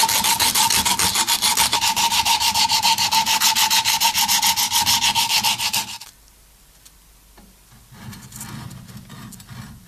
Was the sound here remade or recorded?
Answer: recorded